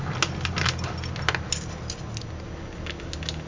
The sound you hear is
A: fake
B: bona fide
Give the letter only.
B